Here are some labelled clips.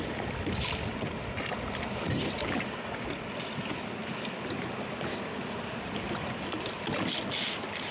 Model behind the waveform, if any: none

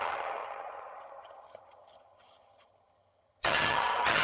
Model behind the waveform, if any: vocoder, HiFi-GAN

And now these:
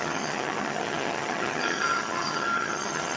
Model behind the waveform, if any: vocoder, HiFi-GAN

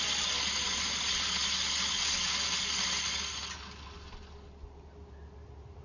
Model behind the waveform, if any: none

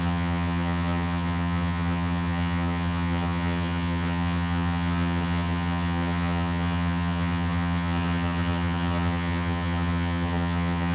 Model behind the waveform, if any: vocoder, HiFi-GAN